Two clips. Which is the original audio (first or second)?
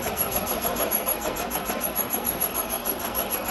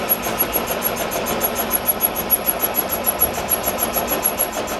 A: second